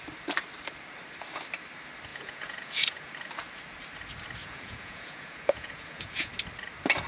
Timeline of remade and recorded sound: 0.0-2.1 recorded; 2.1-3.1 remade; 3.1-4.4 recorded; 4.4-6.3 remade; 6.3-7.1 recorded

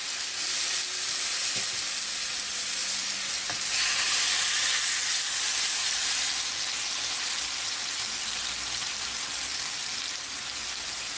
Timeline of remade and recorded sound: 0.0-11.2 recorded

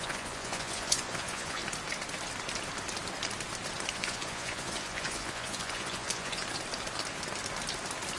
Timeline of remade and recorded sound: 0.0-1.6 remade; 1.6-3.9 recorded; 3.9-6.4 remade; 6.4-8.2 recorded

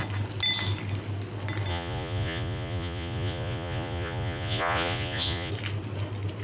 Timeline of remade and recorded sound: 0.0-1.7 recorded; 1.7-5.5 remade; 5.5-6.4 recorded

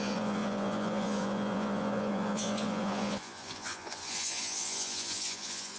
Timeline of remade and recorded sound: 0.0-5.8 remade

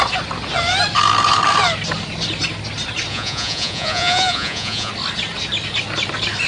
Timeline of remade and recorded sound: 0.0-3.1 recorded; 3.1-4.9 remade; 4.9-6.5 recorded

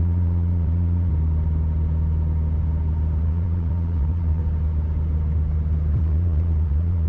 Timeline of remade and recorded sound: 0.0-1.1 remade; 1.1-3.2 recorded; 3.2-4.4 remade; 4.4-6.0 recorded; 6.0-7.1 remade